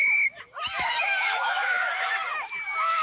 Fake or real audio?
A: fake